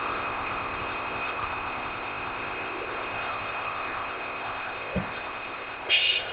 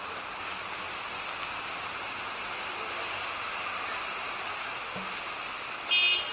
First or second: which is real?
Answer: second